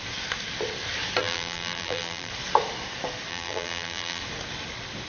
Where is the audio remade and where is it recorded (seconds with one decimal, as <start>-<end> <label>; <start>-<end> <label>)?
0.0-1.2 recorded; 1.2-2.3 remade; 2.3-3.3 recorded; 3.3-4.2 remade; 4.2-5.1 recorded